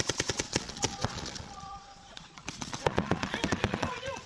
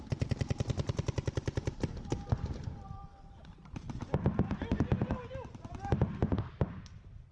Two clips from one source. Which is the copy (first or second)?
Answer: first